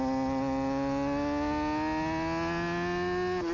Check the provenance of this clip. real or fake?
real